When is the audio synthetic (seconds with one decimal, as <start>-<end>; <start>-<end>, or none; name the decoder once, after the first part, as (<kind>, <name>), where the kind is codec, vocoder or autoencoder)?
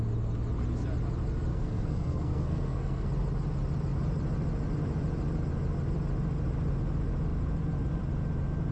1.5-3.1 (codec, SNAC)